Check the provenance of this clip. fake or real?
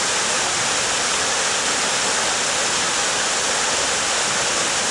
real